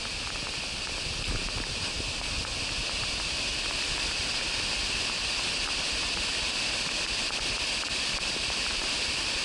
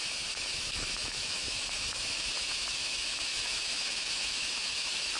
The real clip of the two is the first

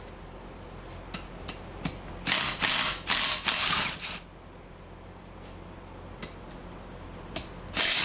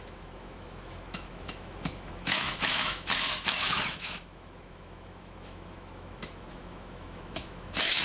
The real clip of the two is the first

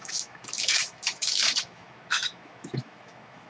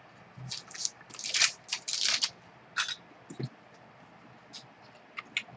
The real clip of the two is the second